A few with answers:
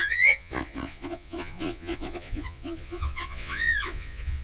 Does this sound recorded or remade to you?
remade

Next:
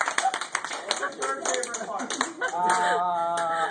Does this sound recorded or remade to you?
recorded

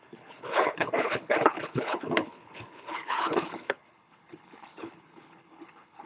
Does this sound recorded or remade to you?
remade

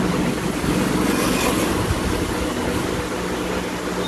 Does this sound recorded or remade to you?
recorded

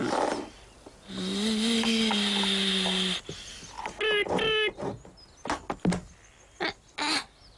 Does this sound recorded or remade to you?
recorded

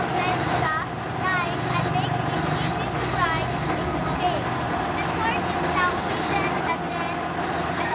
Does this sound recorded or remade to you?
recorded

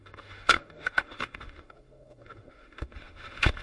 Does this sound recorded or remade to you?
remade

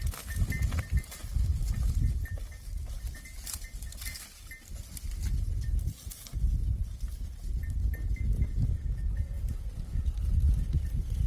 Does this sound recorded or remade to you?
recorded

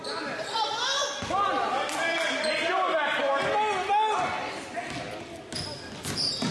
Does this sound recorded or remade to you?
recorded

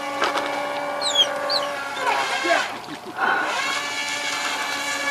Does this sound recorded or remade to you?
recorded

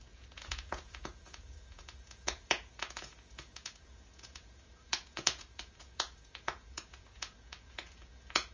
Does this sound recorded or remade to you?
remade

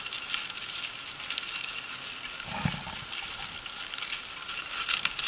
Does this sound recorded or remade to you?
recorded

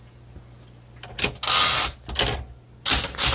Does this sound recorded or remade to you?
recorded